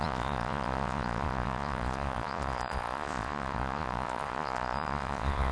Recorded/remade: remade